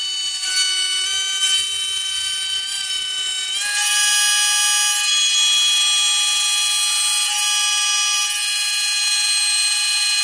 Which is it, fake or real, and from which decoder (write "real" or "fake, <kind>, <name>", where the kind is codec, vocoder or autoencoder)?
real